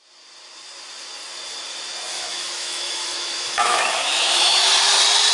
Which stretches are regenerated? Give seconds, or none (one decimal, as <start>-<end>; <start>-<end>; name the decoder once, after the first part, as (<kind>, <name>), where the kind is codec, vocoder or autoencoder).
2.1-4.7 (autoencoder, DAC-VAE)